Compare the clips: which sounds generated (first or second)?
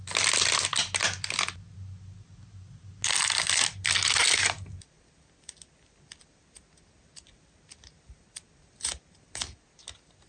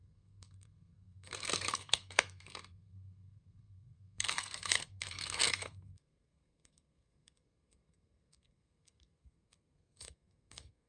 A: second